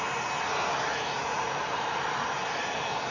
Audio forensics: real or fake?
real